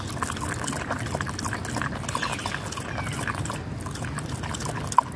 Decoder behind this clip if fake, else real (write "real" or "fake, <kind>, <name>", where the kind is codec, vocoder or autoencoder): real